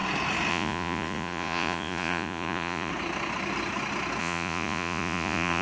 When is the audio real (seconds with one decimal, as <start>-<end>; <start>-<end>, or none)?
0.0-0.5; 2.9-4.2